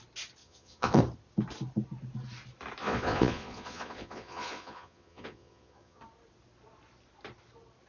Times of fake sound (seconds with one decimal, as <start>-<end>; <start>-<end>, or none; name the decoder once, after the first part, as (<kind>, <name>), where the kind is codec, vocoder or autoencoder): 0.4-1.0 (vocoder, Vocos); 2.8-6.0